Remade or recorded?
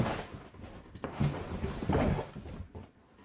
recorded